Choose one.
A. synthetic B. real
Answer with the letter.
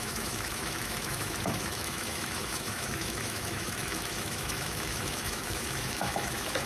A